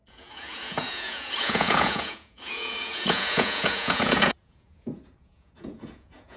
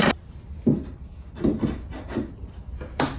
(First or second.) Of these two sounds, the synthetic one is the first